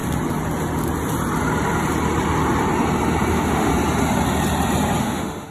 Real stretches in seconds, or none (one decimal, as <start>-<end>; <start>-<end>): 0.0-3.3; 3.7-5.0